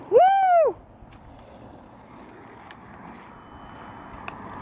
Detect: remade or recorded recorded